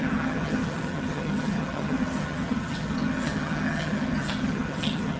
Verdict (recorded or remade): remade